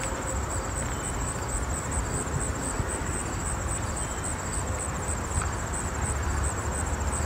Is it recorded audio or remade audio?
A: recorded